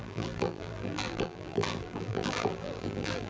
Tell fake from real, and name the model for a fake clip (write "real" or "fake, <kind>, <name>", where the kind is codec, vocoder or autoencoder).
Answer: fake, vocoder, BigVGAN v2